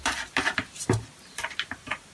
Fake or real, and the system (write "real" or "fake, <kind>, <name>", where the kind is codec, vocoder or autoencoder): real